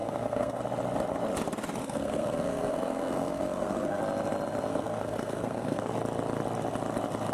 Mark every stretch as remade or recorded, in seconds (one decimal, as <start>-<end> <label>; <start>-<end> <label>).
0.0-0.6 remade; 0.6-1.8 recorded; 1.8-4.0 remade; 4.0-4.7 recorded; 4.7-5.9 remade; 5.9-7.3 recorded